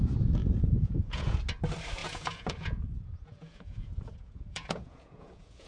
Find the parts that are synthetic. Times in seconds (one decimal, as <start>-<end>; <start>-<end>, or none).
0.4-1.4; 2.0-5.7